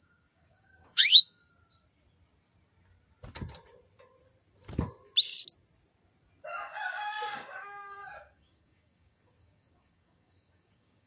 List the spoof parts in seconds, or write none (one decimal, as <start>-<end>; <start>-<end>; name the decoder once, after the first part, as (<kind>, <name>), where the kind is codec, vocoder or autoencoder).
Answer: 0.0-1.4 (codec, DAC); 6.5-11.1

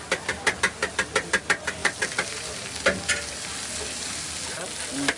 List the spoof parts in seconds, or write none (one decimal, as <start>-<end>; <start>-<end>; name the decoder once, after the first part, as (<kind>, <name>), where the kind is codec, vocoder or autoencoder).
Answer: none

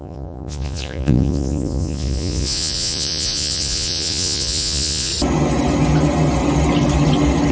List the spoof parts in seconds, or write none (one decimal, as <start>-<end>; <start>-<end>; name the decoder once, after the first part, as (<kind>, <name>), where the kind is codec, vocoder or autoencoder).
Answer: 0.0-5.1 (vocoder, Vocos)

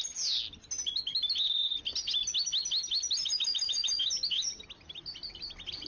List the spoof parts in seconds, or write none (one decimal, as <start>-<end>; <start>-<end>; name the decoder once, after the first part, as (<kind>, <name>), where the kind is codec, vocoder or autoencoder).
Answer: none